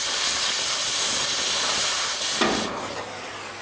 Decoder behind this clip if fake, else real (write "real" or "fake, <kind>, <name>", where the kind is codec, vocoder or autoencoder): real